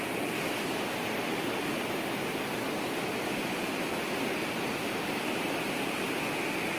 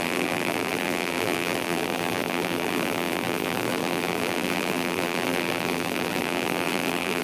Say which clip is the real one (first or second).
first